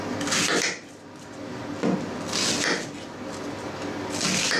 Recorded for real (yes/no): yes